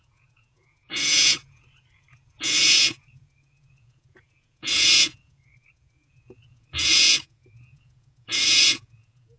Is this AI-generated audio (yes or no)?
yes